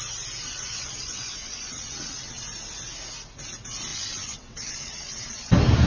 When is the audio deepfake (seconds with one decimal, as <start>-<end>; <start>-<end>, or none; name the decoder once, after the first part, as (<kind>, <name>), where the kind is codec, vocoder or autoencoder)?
0.5-2.4 (vocoder, WaveNeXt); 3.9-5.5